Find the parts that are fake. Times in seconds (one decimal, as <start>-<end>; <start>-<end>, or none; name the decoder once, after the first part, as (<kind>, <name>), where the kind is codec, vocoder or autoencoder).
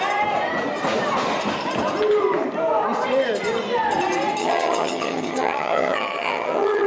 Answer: 4.4-6.9 (vocoder, HiFi-GAN)